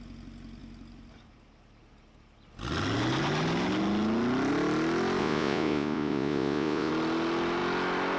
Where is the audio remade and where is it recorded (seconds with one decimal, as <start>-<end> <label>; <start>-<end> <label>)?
0.0-5.2 recorded; 5.2-6.9 remade; 6.9-8.2 recorded